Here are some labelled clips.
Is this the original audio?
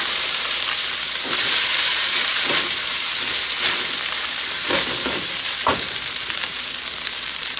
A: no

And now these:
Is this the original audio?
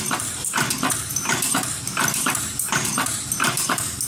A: no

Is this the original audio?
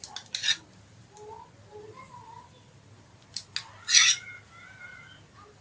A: yes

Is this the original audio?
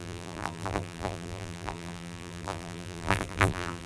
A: no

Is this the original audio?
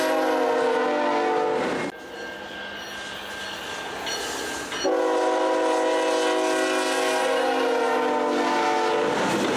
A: yes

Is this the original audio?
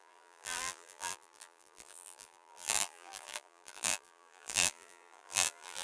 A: no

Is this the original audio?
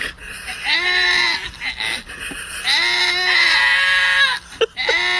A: yes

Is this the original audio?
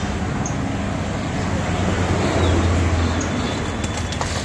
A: yes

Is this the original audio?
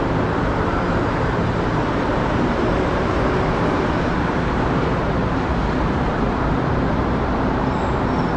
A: no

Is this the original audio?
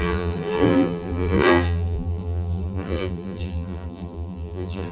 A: no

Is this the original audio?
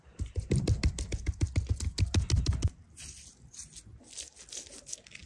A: yes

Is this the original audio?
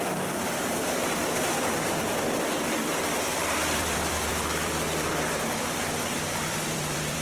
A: no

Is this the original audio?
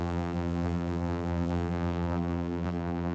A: no